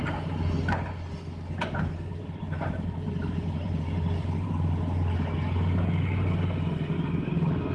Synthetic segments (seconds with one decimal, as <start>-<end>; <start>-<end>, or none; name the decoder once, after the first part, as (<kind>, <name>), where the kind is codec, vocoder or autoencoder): 2.1-4.5 (vocoder, BigVGAN v2)